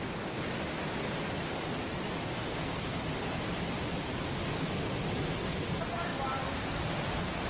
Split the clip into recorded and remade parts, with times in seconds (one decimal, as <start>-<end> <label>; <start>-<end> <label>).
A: 0.0-2.5 recorded; 2.5-3.0 remade; 3.0-7.5 recorded